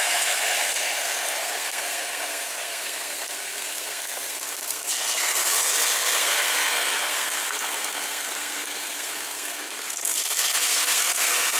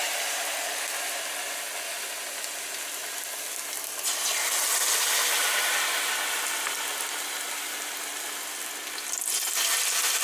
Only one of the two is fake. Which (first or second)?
first